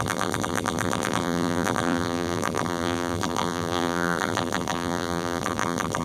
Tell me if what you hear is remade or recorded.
remade